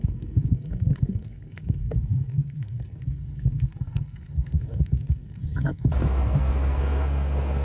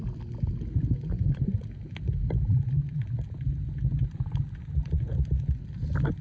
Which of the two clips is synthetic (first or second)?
first